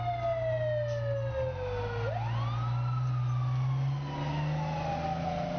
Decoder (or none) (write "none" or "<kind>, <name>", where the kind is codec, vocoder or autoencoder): none